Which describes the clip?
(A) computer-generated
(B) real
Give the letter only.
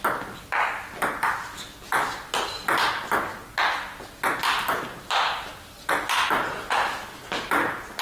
B